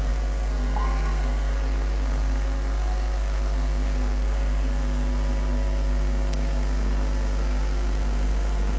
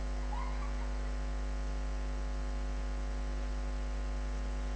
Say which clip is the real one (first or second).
second